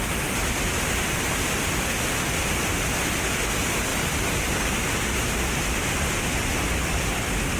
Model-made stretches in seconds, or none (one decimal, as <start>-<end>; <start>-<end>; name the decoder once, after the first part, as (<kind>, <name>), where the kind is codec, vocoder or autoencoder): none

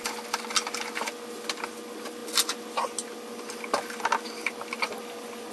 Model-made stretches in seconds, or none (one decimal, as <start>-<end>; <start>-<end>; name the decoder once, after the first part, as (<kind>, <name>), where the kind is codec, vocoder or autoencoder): none

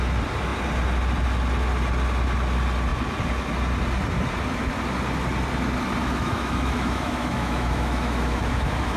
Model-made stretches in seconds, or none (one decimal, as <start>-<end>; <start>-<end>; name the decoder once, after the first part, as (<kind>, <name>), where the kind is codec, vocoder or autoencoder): 6.0-9.0 (autoencoder, DAC-VAE)

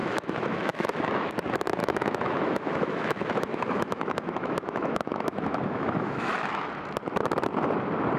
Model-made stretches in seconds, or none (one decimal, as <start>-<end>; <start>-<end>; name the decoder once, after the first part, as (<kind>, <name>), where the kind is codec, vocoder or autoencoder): 0.0-1.3 (autoencoder, DAC-VAE); 1.8-6.7